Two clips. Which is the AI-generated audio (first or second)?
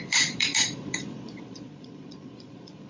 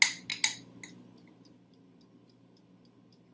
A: first